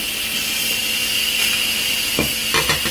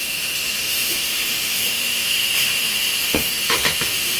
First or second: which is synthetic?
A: second